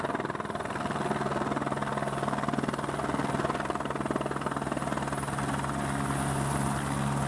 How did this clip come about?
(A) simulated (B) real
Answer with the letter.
B